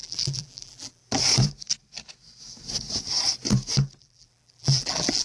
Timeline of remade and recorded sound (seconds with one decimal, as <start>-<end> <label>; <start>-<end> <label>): 0.0-1.0 remade; 1.0-4.0 recorded; 4.0-5.2 remade